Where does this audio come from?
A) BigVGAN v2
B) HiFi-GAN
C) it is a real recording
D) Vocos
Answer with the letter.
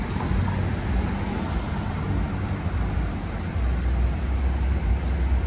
C